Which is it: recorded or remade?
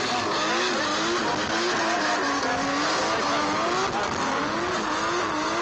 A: recorded